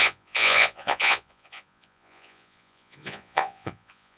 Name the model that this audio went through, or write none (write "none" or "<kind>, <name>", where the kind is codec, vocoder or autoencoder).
vocoder, Vocos